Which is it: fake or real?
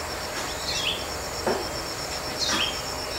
real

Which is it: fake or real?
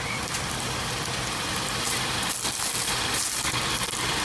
real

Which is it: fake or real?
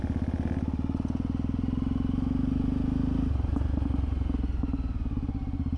real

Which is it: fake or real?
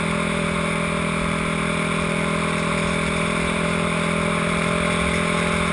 real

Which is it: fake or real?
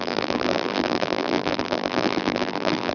fake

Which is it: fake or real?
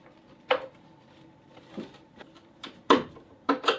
fake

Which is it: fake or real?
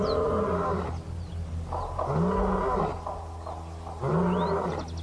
real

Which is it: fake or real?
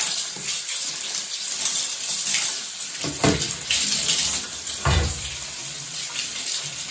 fake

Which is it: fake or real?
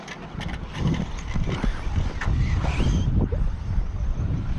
real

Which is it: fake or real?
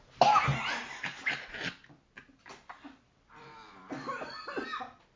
real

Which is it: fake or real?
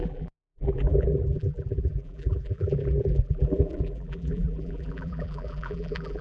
fake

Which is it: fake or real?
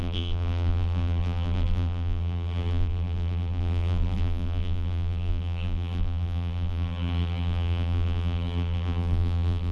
fake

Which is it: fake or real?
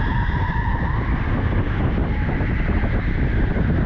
real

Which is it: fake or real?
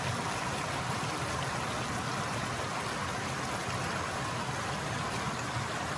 real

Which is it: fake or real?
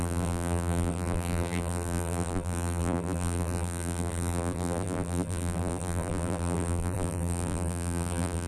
fake